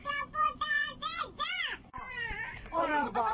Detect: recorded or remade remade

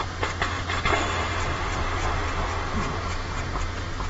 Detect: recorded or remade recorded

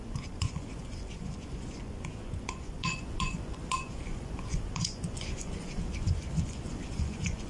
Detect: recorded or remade remade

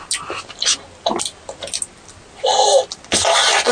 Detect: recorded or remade recorded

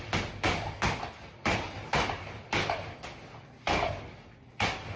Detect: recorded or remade recorded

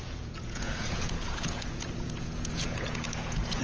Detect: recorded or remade remade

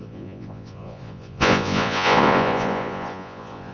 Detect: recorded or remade remade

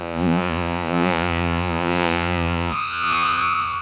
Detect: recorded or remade remade